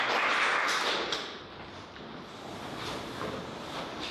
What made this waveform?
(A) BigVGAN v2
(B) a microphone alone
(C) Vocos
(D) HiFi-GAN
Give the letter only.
B